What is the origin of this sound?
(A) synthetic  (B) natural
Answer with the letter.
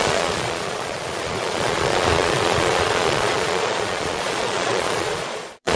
A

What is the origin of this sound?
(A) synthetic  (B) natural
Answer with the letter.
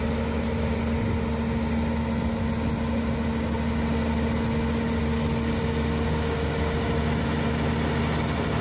B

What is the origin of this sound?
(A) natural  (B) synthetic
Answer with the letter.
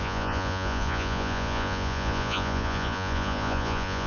B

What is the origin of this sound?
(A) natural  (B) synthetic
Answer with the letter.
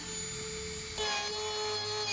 A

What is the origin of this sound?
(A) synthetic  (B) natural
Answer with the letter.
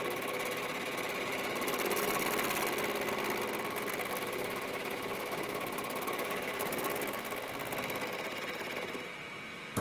B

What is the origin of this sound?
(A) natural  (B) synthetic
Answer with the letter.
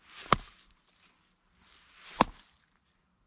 A